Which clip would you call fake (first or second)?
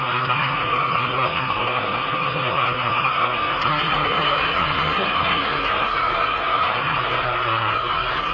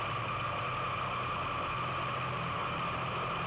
first